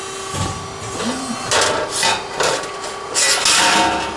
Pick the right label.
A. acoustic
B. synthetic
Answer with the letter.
A